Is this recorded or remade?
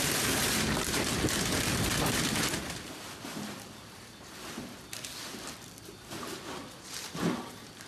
remade